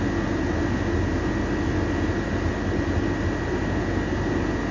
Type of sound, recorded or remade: recorded